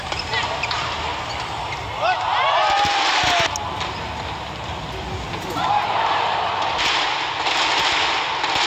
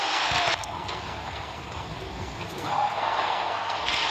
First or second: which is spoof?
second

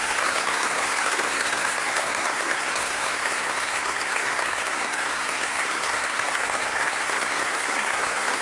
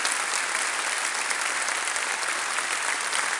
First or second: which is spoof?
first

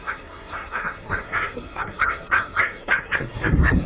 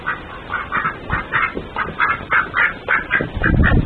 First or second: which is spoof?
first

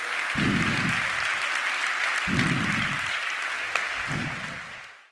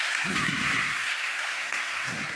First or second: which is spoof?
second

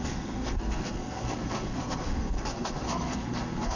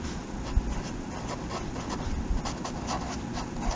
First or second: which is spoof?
first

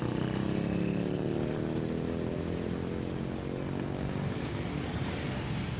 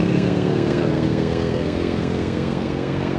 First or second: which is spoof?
second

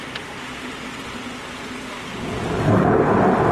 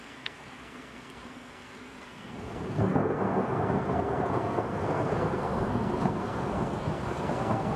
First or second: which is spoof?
second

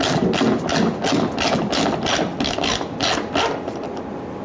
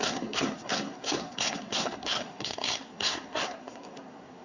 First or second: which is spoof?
second